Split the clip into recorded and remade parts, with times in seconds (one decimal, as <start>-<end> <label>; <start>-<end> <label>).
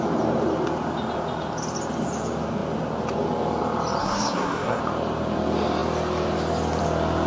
0.0-4.0 recorded; 4.0-4.8 remade; 4.8-7.3 recorded